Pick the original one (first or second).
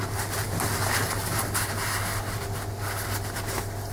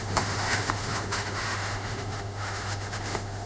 first